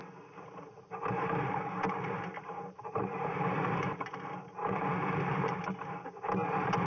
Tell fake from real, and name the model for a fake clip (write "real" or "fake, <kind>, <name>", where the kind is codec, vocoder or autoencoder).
real